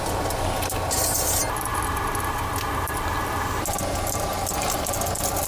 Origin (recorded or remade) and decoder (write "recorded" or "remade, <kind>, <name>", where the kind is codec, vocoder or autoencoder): recorded